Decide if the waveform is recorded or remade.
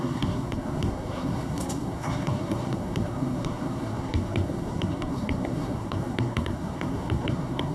remade